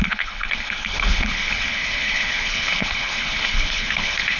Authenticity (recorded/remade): remade